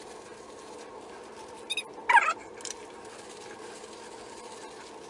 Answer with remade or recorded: recorded